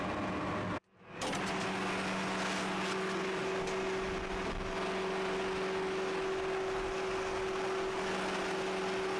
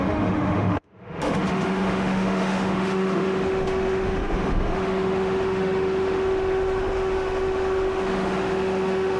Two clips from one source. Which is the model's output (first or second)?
second